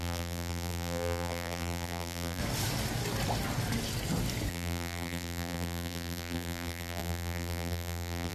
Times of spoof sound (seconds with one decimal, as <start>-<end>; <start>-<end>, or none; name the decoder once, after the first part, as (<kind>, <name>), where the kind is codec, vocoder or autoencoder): 0.0-2.4 (vocoder, BigVGAN v2); 4.5-8.3